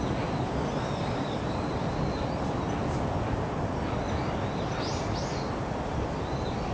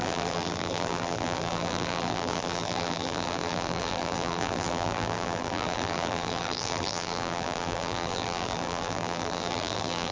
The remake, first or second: second